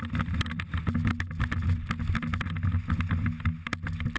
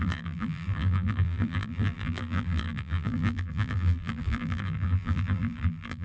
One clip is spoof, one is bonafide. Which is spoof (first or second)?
second